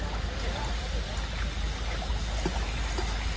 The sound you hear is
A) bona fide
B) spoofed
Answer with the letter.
A